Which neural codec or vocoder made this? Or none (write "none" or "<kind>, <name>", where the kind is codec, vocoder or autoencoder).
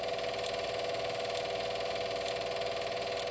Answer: none